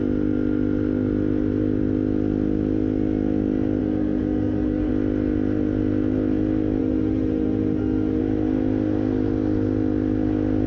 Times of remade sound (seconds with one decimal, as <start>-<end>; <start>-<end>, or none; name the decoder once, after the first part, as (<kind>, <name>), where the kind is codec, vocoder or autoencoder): 3.8-4.9 (autoencoder, DAC-VAE); 6.8-8.2